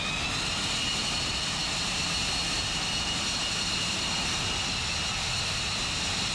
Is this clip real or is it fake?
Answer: real